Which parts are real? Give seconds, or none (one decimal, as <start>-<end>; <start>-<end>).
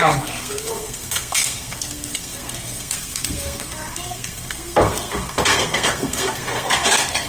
none